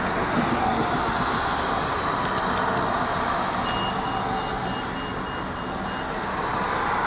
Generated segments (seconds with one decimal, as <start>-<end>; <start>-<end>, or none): none